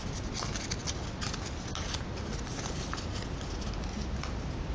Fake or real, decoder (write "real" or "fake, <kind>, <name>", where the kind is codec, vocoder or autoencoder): real